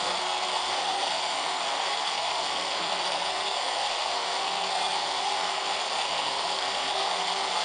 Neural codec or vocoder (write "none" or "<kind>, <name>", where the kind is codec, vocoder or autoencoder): codec, SNAC